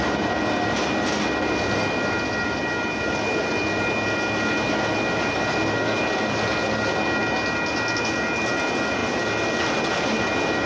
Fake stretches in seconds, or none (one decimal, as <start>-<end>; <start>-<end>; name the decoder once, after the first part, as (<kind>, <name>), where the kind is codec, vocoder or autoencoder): none